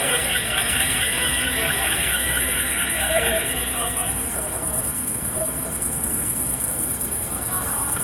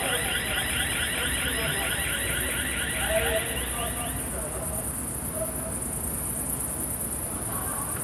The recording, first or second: second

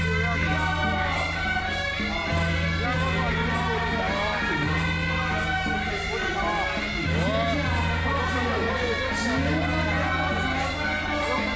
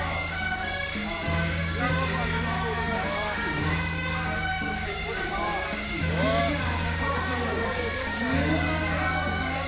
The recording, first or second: first